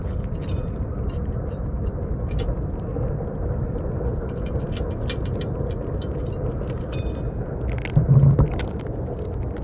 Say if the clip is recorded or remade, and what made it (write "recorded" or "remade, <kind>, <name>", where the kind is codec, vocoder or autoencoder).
recorded